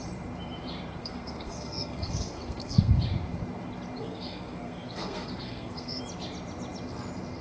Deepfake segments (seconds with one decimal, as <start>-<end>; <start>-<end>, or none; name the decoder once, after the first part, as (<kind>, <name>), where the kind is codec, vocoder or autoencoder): 1.0-2.9 (codec, SNAC); 4.0-6.0